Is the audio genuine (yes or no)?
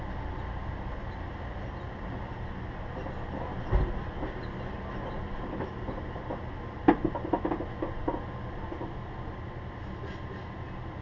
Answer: yes